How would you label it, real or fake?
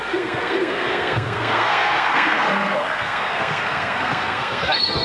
fake